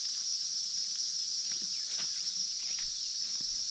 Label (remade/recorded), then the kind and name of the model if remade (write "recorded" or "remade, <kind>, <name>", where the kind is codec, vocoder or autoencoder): recorded